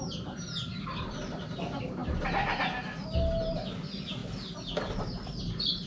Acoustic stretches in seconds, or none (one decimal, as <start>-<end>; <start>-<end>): 2.0-3.8